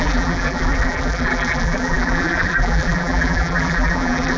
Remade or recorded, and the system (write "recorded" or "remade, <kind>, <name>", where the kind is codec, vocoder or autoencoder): remade, vocoder, BigVGAN v2